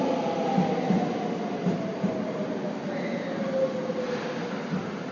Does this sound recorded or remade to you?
recorded